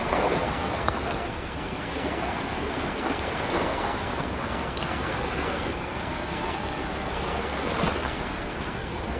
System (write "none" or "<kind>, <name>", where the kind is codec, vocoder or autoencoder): codec, SNAC